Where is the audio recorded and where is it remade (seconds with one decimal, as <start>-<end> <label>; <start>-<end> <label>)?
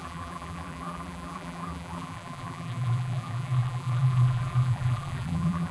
0.0-5.7 remade